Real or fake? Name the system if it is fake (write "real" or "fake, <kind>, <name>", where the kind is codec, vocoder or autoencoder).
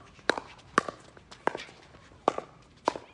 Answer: real